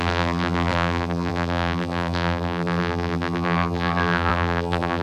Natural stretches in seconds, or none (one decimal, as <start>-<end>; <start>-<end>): none